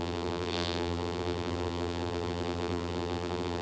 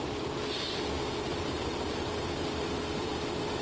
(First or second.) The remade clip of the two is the first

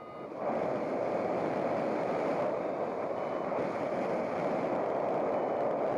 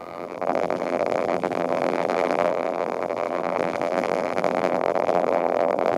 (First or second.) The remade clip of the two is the second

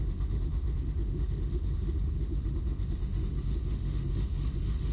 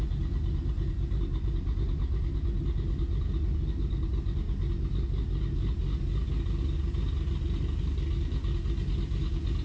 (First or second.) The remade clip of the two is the first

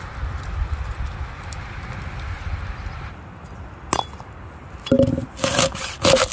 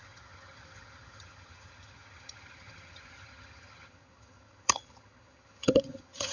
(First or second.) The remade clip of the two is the second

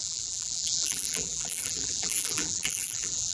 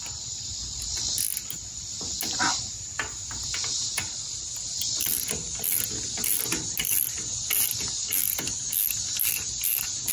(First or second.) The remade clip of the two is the first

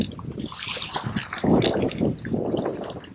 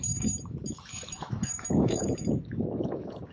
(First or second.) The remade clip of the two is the second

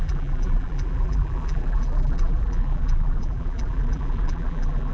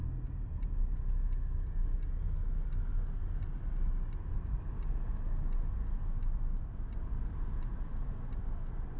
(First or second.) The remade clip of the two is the first